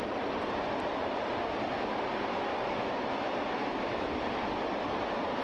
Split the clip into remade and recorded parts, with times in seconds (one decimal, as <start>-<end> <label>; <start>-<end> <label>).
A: 0.0-2.5 recorded; 2.5-4.1 remade; 4.1-5.4 recorded